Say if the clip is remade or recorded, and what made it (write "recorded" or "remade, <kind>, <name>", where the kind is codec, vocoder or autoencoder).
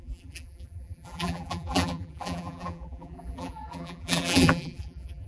remade, vocoder, BigVGAN v2